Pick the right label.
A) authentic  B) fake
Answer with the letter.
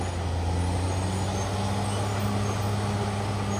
A